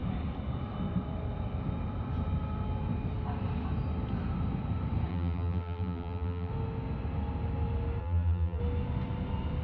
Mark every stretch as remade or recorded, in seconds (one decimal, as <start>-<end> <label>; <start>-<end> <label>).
0.0-5.1 recorded; 5.1-6.5 remade; 6.5-8.0 recorded; 8.0-8.6 remade; 8.6-9.6 recorded